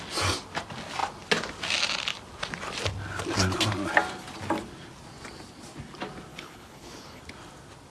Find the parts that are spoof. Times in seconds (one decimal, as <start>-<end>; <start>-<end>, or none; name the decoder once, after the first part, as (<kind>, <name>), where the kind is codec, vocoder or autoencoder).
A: 6.3-7.2 (codec, HILCodec)